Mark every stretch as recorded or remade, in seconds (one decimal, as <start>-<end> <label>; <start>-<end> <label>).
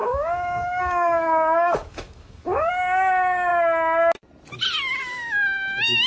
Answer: 0.0-2.7 remade; 2.7-6.1 recorded